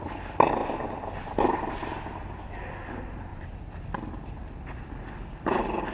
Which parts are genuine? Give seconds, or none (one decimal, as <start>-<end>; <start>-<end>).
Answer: 0.6-1.7; 3.3-4.1

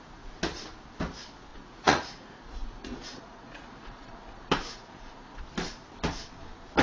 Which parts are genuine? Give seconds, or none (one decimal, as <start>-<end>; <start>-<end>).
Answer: 0.0-1.5; 5.4-6.8

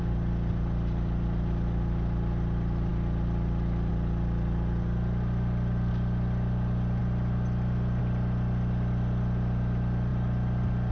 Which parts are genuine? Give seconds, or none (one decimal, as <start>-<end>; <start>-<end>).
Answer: 0.0-2.9; 3.9-7.0; 8.0-10.1

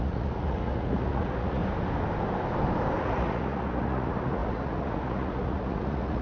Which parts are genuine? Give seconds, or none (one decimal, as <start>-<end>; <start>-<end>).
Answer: 1.6-3.0

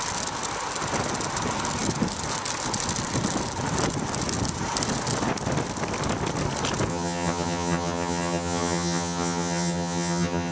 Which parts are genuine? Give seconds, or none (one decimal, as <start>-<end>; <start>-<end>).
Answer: 0.0-6.9

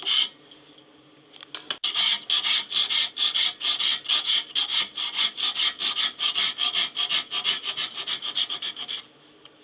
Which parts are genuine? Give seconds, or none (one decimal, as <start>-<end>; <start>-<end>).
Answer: 0.0-9.6